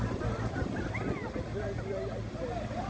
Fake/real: real